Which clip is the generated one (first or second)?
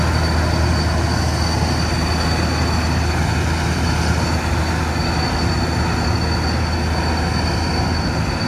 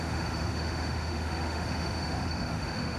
second